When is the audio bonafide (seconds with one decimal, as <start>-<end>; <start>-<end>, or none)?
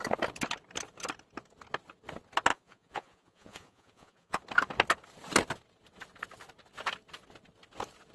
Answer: 0.0-2.5; 4.4-8.1